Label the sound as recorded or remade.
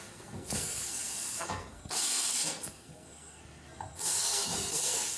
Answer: remade